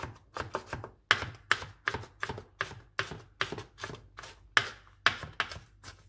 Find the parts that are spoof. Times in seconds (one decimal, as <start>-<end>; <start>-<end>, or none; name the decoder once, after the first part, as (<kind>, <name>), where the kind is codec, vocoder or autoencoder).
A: none